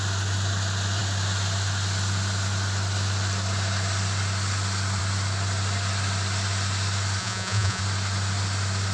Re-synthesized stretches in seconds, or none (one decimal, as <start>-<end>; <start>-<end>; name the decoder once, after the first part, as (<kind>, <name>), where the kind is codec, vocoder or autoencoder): 7.2-7.8 (vocoder, Vocos)